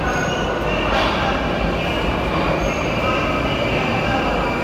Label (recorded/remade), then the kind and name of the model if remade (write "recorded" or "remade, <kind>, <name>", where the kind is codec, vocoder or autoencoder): recorded